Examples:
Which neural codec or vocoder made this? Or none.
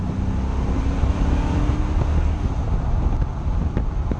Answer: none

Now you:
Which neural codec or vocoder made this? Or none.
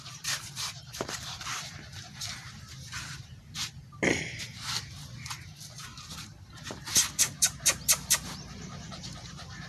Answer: vocoder, BigVGAN v2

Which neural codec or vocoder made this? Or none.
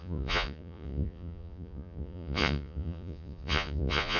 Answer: vocoder, Vocos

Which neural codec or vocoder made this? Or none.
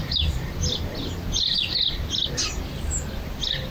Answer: none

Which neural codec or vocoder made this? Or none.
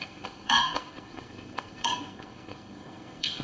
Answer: codec, SNAC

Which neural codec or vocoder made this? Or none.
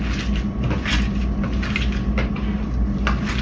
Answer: none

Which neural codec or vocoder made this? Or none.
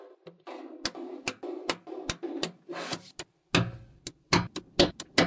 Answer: none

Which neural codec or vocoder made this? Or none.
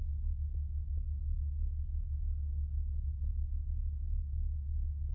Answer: none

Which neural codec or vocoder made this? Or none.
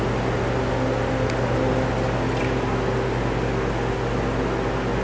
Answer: none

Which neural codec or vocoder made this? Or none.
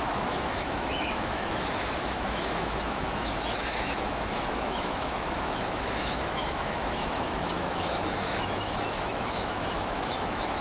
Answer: autoencoder, DAC-VAE